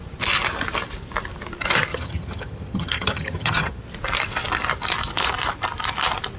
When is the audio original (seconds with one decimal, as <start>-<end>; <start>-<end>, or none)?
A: 0.0-1.9; 3.8-6.4